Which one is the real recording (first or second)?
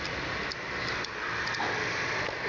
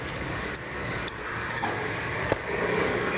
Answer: first